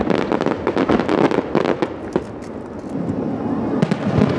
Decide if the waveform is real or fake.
real